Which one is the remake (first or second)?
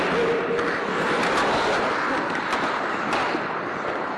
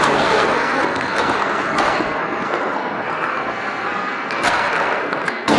second